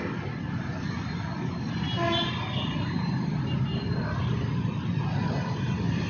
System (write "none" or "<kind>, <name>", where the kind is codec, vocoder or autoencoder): none